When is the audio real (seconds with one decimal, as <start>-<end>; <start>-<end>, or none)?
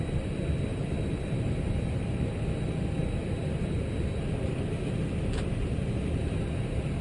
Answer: 0.0-0.7; 2.4-7.0